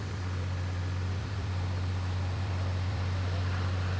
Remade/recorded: remade